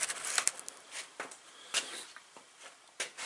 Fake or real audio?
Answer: real